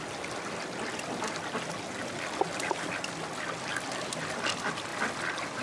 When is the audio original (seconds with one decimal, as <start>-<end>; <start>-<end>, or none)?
0.0-5.6